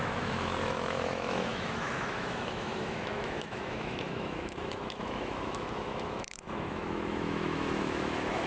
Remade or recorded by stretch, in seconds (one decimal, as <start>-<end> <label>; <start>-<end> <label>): 0.0-8.5 remade